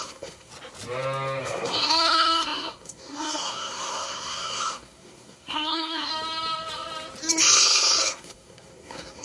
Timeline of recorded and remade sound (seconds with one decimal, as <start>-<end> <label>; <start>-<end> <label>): 0.0-0.5 remade; 0.5-1.4 recorded; 1.4-6.1 remade; 6.1-7.4 recorded; 7.4-9.2 remade